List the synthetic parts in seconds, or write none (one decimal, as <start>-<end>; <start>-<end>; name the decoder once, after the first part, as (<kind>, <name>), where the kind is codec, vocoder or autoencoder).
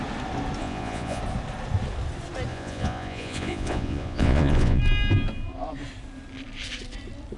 0.6-1.2 (vocoder, Vocos); 2.5-4.8